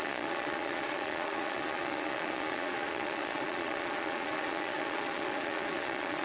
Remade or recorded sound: remade